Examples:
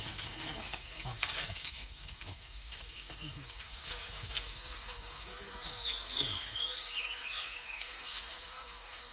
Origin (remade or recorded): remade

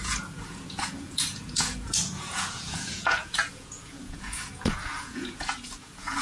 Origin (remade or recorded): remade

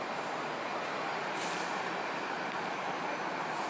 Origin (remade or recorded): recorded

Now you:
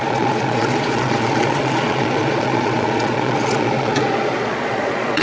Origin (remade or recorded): remade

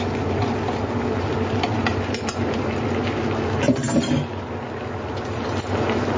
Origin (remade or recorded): recorded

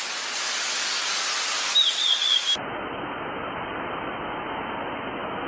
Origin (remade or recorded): recorded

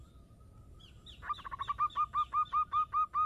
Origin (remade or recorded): recorded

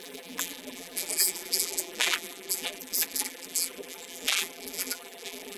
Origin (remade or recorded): remade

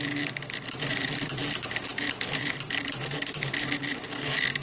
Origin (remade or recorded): recorded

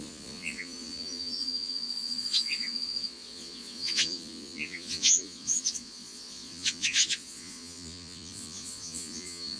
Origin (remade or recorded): remade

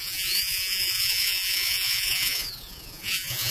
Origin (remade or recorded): remade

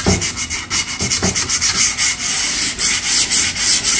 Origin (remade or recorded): recorded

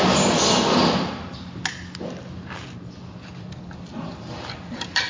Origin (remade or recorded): recorded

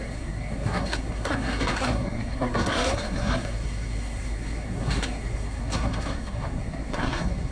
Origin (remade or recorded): remade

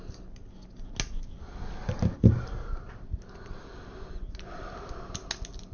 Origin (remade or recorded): recorded